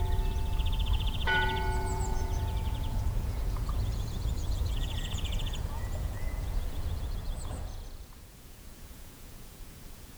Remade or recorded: remade